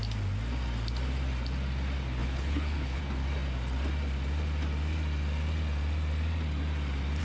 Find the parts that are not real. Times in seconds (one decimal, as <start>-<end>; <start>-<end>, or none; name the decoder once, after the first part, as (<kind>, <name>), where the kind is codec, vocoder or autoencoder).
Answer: 2.2-3.0 (codec, HILCodec)

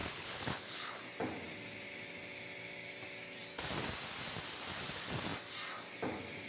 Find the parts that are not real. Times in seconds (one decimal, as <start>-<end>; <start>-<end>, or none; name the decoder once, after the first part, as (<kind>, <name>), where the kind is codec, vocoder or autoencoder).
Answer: 0.0-1.0 (codec, HILCodec)

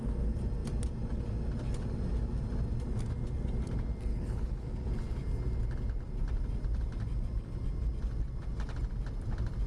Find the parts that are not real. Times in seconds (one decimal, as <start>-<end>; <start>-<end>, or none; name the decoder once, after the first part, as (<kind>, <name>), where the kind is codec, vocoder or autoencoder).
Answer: 4.1-4.9 (codec, HILCodec)

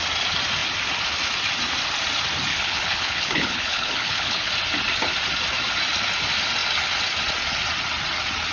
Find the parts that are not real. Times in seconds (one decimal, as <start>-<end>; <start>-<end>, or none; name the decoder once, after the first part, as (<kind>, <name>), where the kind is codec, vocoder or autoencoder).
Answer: 2.5-4.5 (codec, HILCodec)

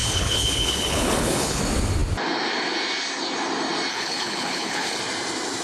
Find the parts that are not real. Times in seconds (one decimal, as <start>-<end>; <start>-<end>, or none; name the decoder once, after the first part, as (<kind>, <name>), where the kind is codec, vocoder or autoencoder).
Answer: 0.0-1.6 (codec, HILCodec); 3.9-5.0

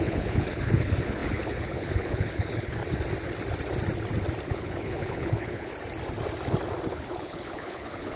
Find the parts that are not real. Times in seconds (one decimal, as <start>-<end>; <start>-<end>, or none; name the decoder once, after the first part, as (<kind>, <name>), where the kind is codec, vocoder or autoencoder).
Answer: 0.0-2.8 (codec, HILCodec); 4.5-5.7; 6.9-8.2

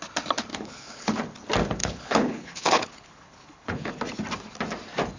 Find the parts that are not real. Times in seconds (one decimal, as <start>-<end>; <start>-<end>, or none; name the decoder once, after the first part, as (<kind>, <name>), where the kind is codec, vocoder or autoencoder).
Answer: 0.5-1.1 (codec, HILCodec); 1.8-3.9